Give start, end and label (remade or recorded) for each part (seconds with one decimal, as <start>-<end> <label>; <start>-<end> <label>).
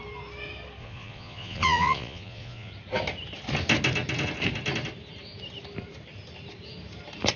0.0-0.8 recorded; 0.8-2.7 remade; 2.7-7.4 recorded